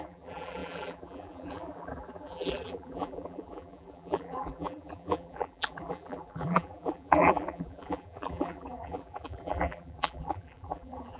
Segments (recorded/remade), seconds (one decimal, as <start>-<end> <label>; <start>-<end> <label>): 0.0-11.2 remade